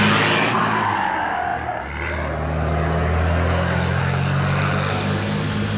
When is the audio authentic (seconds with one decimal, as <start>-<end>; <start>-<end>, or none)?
0.0-5.8